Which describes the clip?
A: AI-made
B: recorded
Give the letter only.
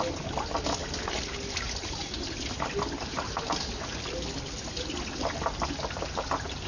B